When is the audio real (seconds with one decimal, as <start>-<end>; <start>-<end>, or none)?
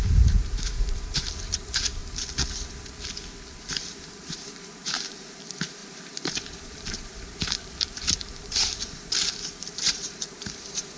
2.0-3.6